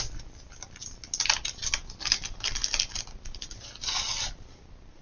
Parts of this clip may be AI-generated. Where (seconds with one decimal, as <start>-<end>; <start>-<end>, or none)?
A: none